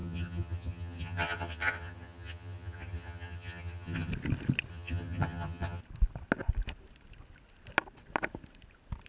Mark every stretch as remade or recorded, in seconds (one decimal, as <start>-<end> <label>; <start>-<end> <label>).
0.0-4.1 remade; 4.1-4.7 recorded; 4.7-5.8 remade; 5.8-9.1 recorded

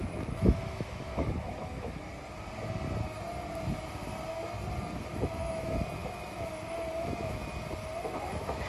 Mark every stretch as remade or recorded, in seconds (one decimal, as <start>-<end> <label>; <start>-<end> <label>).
0.0-2.1 remade; 2.1-4.8 recorded; 4.8-7.4 remade; 7.4-8.0 recorded; 8.0-8.7 remade

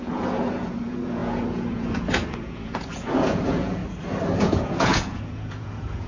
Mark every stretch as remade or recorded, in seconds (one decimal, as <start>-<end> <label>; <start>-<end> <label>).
0.0-3.8 remade; 3.8-4.4 recorded; 4.4-6.1 remade